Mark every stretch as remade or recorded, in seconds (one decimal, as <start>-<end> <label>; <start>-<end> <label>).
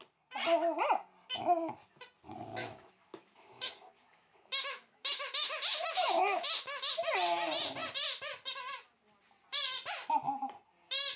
0.0-2.5 recorded; 2.5-6.9 remade; 6.9-11.2 recorded